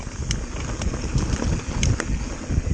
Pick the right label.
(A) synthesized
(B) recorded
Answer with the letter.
B